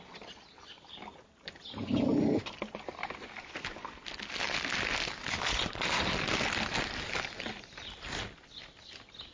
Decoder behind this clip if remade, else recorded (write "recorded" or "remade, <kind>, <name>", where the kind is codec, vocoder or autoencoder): recorded